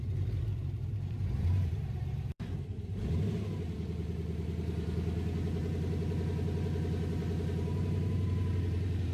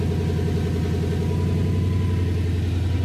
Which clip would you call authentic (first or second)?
second